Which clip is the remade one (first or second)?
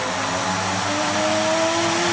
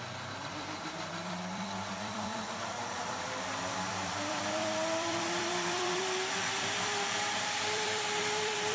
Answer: second